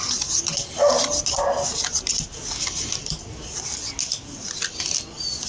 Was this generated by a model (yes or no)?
no